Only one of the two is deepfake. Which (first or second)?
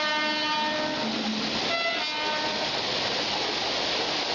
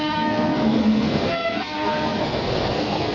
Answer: second